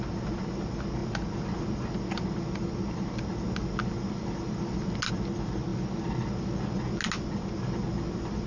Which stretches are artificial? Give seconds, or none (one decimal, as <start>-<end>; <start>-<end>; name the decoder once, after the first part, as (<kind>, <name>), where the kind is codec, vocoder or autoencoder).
none